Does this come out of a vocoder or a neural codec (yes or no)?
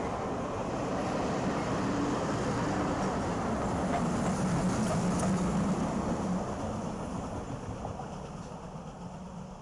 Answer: no